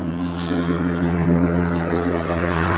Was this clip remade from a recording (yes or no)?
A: yes